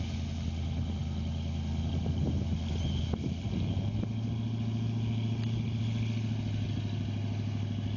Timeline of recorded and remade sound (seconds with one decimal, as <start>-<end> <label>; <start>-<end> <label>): 0.0-8.0 recorded